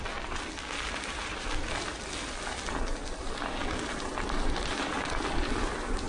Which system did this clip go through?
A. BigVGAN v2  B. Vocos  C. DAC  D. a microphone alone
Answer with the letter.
D